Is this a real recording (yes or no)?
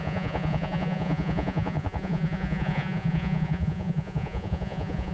no